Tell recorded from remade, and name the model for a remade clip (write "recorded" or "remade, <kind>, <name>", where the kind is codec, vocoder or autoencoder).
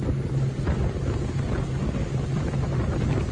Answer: recorded